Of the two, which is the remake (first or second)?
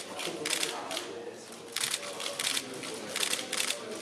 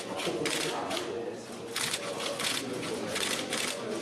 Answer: second